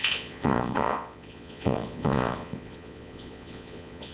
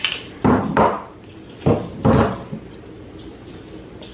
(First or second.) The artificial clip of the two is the first